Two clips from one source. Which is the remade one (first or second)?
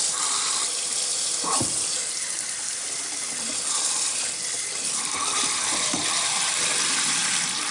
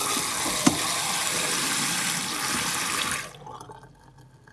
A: first